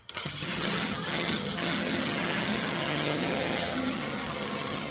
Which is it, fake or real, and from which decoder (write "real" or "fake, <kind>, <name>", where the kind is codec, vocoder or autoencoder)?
fake, vocoder, HiFi-GAN